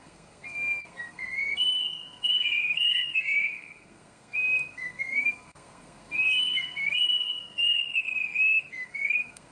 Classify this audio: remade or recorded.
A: remade